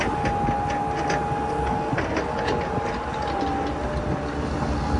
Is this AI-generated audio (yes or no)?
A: no